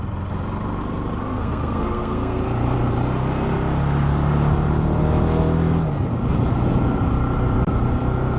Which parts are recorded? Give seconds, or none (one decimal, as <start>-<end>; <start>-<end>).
0.0-1.3; 2.4-8.4